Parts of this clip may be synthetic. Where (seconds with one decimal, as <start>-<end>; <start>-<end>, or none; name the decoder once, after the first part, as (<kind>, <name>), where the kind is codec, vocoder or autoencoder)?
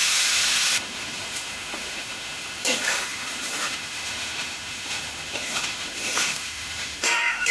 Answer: 0.0-7.5 (autoencoder, DAC-VAE)